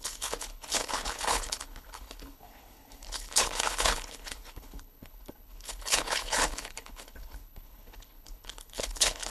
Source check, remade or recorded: remade